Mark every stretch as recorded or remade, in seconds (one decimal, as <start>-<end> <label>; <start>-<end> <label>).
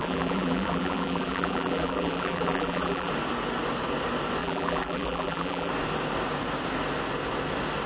0.0-3.1 remade; 3.1-4.4 recorded; 4.4-5.7 remade; 5.7-7.9 recorded